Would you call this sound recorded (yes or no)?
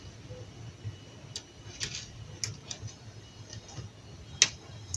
yes